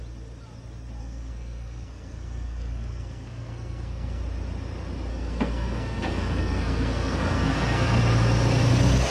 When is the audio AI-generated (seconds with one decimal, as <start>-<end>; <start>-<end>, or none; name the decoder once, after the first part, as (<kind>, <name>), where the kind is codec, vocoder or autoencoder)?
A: 1.0-4.2 (codec, SNAC); 5.1-8.0